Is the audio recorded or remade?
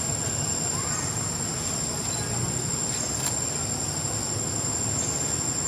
recorded